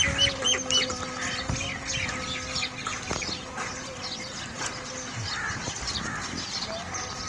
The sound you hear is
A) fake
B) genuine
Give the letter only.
B